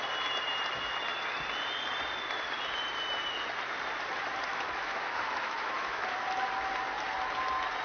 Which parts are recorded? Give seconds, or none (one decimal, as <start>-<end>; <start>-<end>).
0.0-4.5; 6.0-7.8